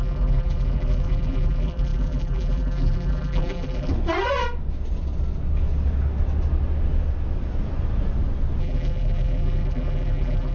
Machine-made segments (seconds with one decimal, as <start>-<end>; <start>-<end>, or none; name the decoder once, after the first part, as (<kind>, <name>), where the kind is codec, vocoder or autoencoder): 0.0-3.9 (vocoder, BigVGAN v2); 8.6-10.5